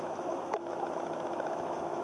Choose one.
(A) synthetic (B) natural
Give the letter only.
A